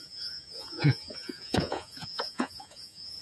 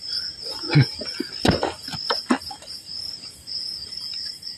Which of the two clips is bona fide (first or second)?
second